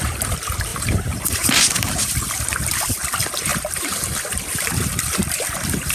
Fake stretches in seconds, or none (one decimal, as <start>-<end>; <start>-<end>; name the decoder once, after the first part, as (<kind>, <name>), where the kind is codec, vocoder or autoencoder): 0.7-2.4 (vocoder, BigVGAN v2); 3.5-4.0